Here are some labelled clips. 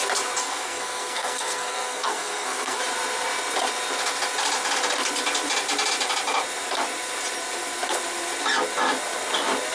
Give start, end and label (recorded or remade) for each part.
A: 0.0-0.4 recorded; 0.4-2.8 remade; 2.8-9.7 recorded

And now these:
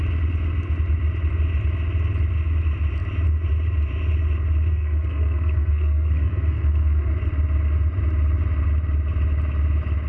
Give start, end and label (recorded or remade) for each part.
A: 0.0-4.7 recorded; 4.7-7.1 remade; 7.1-10.1 recorded

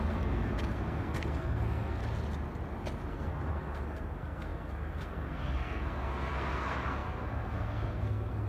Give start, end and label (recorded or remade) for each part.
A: 0.0-2.0 remade; 2.0-3.1 recorded; 3.1-8.5 remade

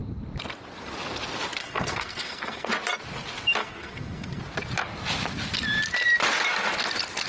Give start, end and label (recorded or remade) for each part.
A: 0.0-1.6 recorded; 1.6-2.7 remade; 2.7-3.6 recorded; 3.6-4.4 remade; 4.4-7.3 recorded

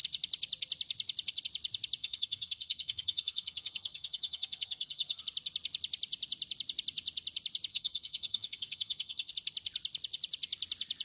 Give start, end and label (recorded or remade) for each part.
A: 0.0-2.0 recorded; 2.0-5.2 remade; 5.2-7.7 recorded; 7.7-9.3 remade; 9.3-11.0 recorded

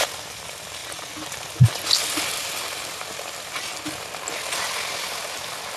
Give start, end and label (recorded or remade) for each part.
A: 0.0-5.8 recorded

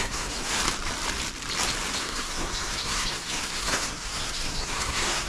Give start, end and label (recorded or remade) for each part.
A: 0.0-0.6 remade; 0.6-2.0 recorded; 2.0-5.3 remade

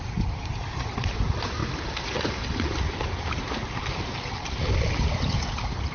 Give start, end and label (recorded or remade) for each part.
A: 0.0-5.9 recorded